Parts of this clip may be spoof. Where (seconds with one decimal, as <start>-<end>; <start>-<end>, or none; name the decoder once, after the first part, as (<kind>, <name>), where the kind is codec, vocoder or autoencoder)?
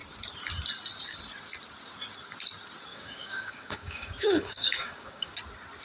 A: 2.9-5.3 (codec, DAC)